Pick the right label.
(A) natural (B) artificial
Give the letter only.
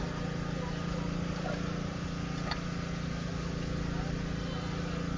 A